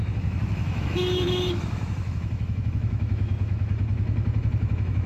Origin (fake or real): fake